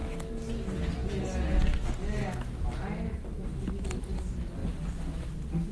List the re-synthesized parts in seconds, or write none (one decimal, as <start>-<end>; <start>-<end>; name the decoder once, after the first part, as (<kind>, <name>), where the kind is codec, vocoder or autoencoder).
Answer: none